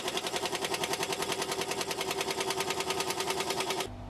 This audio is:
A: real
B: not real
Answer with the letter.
A